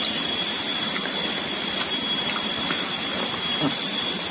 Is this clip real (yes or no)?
yes